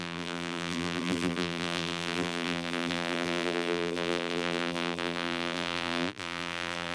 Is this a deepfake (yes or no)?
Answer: yes